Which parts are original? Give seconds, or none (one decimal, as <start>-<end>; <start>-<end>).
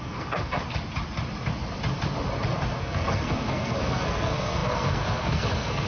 0.6-2.8